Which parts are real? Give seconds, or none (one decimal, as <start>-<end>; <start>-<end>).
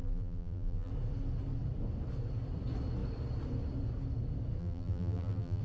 0.9-4.6